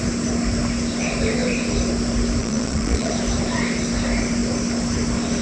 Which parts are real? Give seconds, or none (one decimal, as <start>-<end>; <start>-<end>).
0.0-2.4; 3.1-5.4